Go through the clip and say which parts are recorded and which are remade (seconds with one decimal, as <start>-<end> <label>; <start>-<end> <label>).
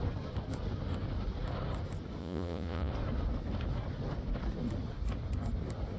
0.0-2.2 recorded; 2.2-2.9 remade; 2.9-6.0 recorded